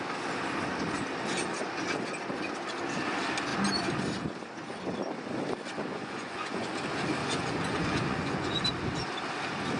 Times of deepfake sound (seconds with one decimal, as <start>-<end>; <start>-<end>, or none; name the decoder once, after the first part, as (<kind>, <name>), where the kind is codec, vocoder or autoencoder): 5.9-6.7 (vocoder, Vocos); 7.2-8.6